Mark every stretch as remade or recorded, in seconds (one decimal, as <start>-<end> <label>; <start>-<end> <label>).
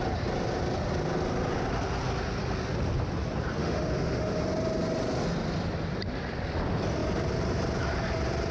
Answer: 0.0-3.6 recorded; 3.6-4.4 remade; 4.4-8.5 recorded